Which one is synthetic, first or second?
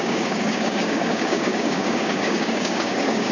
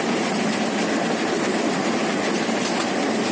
first